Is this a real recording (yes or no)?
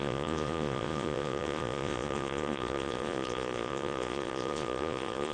no